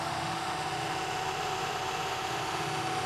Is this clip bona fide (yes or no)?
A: no